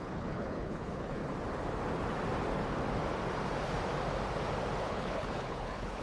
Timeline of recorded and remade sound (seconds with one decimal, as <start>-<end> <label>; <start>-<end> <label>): 0.0-1.2 remade; 1.2-4.8 recorded; 4.8-6.0 remade